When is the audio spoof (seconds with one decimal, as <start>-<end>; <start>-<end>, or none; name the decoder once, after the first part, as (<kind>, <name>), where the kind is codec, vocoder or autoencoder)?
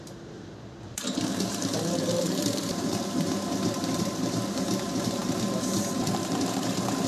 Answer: 0.0-7.1 (vocoder, BigVGAN v2)